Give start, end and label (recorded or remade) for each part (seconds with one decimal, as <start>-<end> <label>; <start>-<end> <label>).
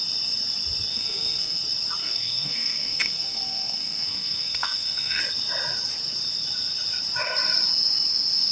0.0-0.9 recorded; 0.9-1.6 remade; 1.6-2.0 recorded; 2.0-5.2 remade; 5.2-8.5 recorded